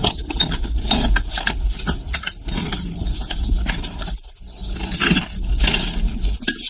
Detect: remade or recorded recorded